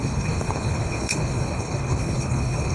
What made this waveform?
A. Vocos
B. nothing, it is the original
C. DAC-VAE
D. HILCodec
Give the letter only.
D